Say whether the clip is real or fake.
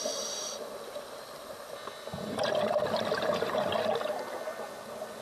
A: fake